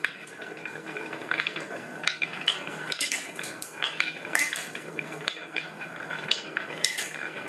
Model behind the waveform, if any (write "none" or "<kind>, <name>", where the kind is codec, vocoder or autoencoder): codec, SNAC